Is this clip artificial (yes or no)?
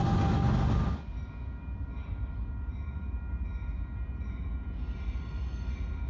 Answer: no